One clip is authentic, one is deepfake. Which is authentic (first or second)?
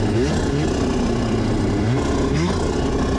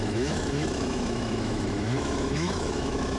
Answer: first